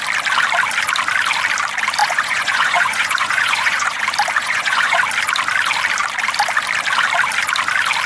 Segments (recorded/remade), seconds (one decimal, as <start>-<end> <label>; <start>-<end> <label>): 0.0-2.0 recorded; 2.0-4.0 remade; 4.0-4.4 recorded; 4.4-5.0 remade; 5.0-8.1 recorded